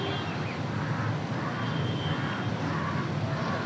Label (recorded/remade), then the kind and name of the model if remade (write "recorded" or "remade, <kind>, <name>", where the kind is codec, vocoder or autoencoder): recorded